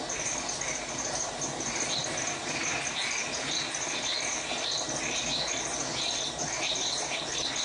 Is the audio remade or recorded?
recorded